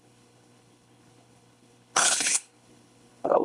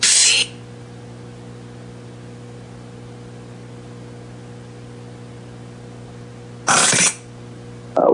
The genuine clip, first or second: second